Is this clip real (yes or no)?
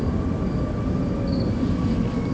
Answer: yes